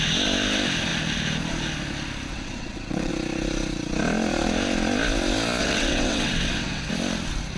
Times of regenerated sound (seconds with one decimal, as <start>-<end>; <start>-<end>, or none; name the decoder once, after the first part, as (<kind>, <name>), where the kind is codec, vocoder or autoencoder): 2.3-3.1 (vocoder, WaveNeXt); 5.6-6.9